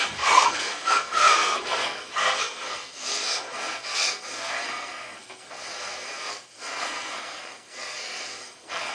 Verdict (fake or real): fake